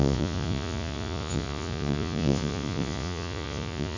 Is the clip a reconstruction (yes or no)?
yes